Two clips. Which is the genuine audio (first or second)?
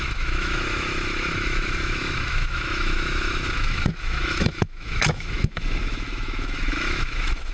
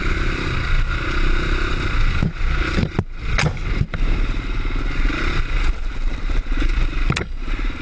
second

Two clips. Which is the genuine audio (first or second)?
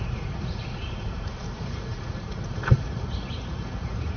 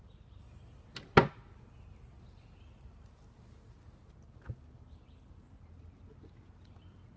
second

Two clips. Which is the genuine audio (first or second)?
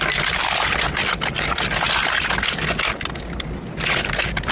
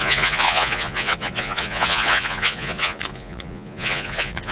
first